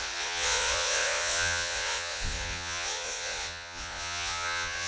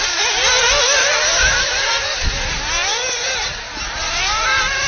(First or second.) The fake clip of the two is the first